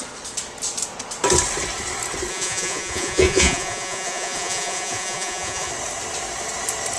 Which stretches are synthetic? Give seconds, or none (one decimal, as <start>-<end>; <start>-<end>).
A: 2.3-5.7